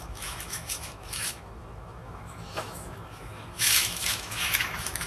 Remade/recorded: remade